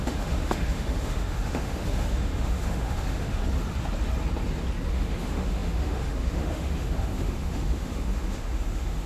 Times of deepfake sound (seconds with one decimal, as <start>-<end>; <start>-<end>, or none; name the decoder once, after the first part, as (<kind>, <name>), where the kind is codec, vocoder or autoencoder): 0.0-3.4 (autoencoder, DAC-VAE); 4.9-9.1